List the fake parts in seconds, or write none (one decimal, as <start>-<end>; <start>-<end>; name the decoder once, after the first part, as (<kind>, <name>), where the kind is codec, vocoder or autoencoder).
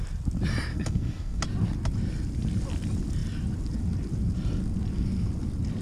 0.7-1.4 (codec, SNAC)